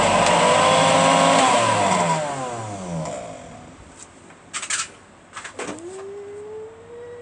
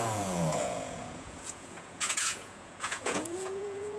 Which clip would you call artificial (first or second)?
second